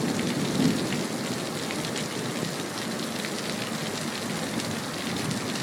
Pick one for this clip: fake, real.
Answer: real